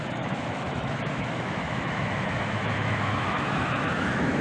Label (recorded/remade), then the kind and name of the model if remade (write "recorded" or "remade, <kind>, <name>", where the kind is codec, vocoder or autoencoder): remade, autoencoder, DAC-VAE